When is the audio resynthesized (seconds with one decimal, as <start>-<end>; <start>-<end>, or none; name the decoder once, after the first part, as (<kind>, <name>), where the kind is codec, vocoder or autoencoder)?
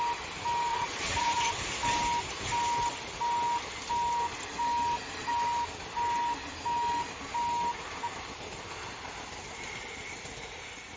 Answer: 0.7-1.5 (vocoder, Vocos)